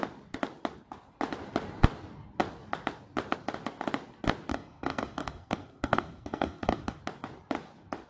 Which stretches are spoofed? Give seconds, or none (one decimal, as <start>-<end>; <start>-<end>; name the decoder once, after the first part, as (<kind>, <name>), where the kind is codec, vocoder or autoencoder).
4.5-7.0 (codec, SNAC)